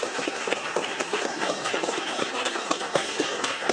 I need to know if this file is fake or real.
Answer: fake